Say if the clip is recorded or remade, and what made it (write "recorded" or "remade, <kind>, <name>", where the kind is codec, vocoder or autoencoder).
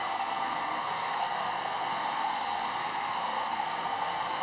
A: remade, codec, SNAC